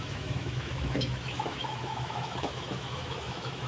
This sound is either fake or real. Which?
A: fake